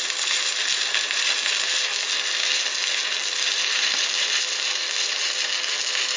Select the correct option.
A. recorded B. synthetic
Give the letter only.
A